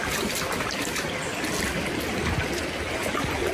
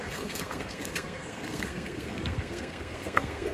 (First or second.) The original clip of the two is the first